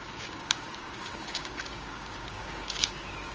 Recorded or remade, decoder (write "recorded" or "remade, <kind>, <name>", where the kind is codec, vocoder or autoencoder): remade, codec, DAC